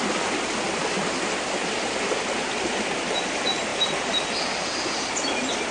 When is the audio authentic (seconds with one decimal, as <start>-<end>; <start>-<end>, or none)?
0.0-5.7